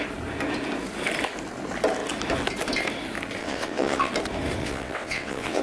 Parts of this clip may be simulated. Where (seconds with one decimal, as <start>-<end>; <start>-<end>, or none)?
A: 3.4-4.1; 4.6-5.6